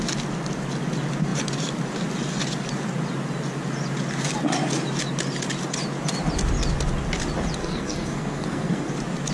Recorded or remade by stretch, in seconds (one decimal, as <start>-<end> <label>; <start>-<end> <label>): 0.0-7.6 recorded; 7.6-8.9 remade; 8.9-9.3 recorded